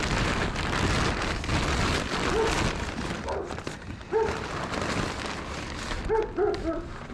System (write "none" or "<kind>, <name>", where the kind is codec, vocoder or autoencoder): none